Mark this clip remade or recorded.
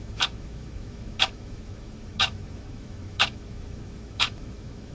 remade